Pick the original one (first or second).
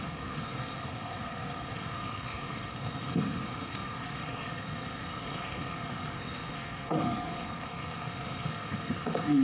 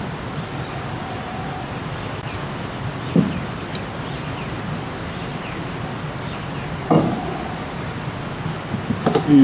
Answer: second